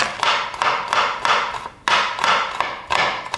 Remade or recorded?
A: recorded